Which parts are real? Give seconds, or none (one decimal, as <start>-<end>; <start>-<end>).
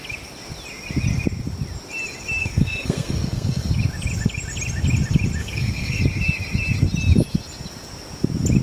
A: 0.0-2.4; 3.7-5.4; 6.0-8.6